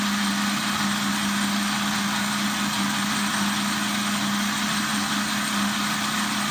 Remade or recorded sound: recorded